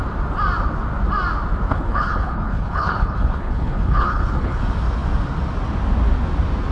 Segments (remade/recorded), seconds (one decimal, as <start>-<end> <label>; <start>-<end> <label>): 0.0-1.7 recorded; 1.7-4.6 remade; 4.6-6.7 recorded